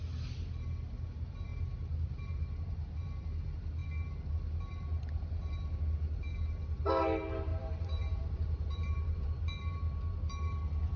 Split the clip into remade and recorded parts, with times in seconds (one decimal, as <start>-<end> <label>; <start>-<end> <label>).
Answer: 0.0-1.5 recorded; 1.5-2.9 remade; 2.9-7.5 recorded; 7.5-9.4 remade; 9.4-11.0 recorded